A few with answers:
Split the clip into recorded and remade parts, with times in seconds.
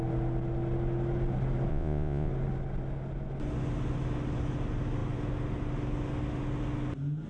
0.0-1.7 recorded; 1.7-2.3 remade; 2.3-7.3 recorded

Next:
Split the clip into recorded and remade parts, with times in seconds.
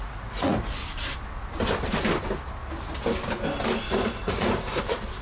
0.0-0.8 remade; 0.8-3.9 recorded; 3.9-5.2 remade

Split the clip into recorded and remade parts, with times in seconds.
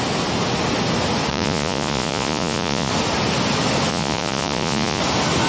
0.0-1.3 recorded; 1.3-2.9 remade; 2.9-3.9 recorded; 3.9-5.0 remade; 5.0-5.5 recorded